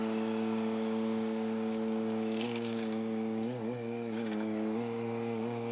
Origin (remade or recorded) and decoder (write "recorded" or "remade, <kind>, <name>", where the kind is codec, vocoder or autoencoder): remade, codec, DAC